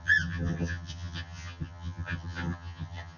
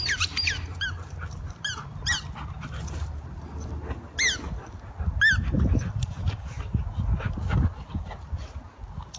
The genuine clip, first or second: second